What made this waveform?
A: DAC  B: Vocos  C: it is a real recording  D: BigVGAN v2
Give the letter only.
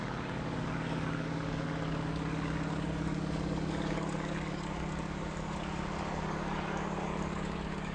A